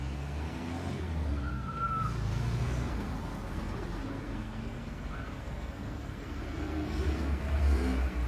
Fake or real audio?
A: fake